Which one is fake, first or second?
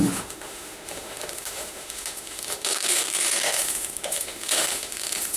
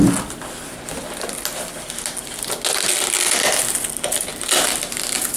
first